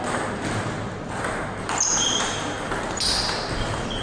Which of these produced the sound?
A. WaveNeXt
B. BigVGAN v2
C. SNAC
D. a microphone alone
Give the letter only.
D